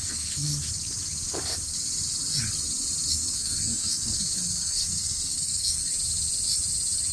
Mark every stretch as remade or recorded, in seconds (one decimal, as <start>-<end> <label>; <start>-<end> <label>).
0.0-0.5 remade; 0.5-3.1 recorded; 3.1-5.9 remade; 5.9-7.1 recorded